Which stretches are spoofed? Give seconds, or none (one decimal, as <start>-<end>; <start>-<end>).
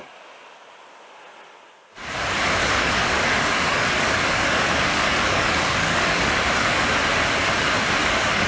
2.6-6.8; 8.0-8.5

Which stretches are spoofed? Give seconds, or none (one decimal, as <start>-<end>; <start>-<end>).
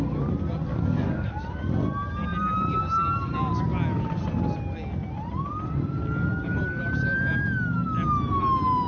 0.7-1.3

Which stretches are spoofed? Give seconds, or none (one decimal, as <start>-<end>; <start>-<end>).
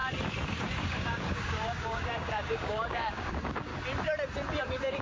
0.5-3.7; 4.6-5.0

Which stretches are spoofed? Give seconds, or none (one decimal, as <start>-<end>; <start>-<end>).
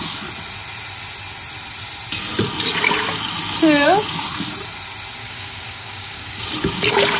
5.2-6.4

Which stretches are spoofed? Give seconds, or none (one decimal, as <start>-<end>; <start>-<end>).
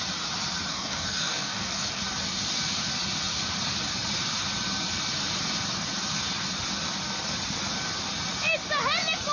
0.7-2.0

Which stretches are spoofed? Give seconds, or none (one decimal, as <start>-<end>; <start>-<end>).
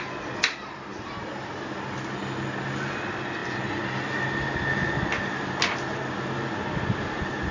none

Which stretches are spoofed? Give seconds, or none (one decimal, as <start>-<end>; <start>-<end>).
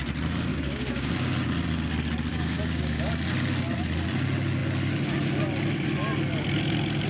0.5-1.1; 2.3-3.1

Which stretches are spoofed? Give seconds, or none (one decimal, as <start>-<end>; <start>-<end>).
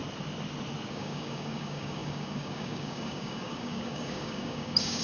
0.9-5.0